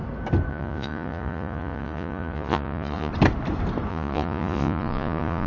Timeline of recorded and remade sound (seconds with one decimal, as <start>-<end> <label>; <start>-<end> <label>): 0.0-0.5 recorded; 0.5-3.1 remade; 3.1-3.9 recorded; 3.9-5.5 remade